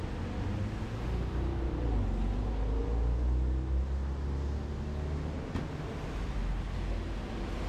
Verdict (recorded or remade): recorded